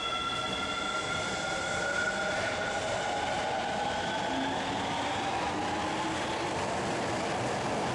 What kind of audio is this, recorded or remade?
recorded